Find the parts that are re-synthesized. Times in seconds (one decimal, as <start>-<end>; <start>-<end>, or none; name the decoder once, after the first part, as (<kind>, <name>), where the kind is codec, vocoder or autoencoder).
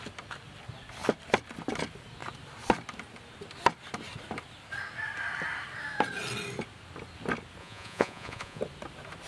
7.6-8.6 (vocoder, Vocos)